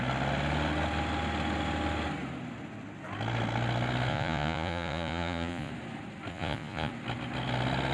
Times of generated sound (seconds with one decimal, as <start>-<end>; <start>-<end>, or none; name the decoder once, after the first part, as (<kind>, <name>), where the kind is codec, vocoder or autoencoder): 4.1-5.7 (vocoder, Vocos); 6.3-6.9